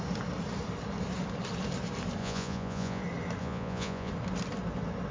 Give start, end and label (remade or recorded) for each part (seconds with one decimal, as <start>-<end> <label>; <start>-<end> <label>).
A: 0.0-2.2 recorded; 2.2-3.0 remade; 3.0-3.4 recorded; 3.4-4.1 remade; 4.1-5.1 recorded

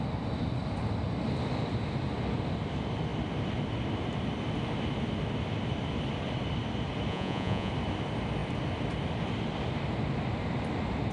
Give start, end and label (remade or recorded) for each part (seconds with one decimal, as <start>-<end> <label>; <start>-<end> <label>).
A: 0.0-7.1 recorded; 7.1-7.7 remade; 7.7-11.1 recorded

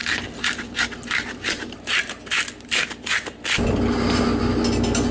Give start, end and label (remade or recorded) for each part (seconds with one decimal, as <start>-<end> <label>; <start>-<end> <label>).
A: 0.0-5.1 recorded

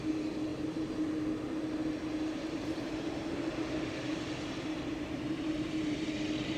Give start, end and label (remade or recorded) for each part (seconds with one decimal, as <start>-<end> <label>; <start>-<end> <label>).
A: 0.0-0.5 recorded; 0.5-1.1 remade; 1.1-1.8 recorded; 1.8-3.4 remade; 3.4-4.1 recorded; 4.1-6.1 remade; 6.1-6.6 recorded

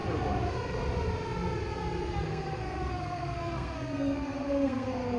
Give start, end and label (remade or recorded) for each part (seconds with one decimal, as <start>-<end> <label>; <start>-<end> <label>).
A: 0.0-2.0 recorded; 2.0-5.2 remade

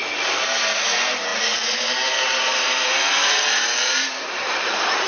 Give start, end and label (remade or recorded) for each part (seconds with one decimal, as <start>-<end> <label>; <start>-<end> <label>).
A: 0.0-0.8 recorded; 0.8-5.1 remade

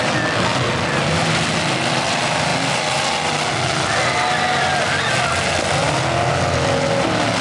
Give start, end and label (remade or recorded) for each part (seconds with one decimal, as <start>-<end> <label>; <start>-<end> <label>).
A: 0.0-7.4 recorded

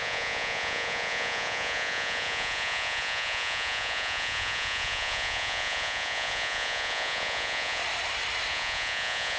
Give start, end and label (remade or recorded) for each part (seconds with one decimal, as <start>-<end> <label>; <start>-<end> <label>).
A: 0.0-7.8 remade; 7.8-8.5 recorded; 8.5-9.4 remade